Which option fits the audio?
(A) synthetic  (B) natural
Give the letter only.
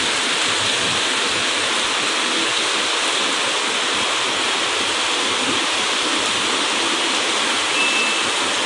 B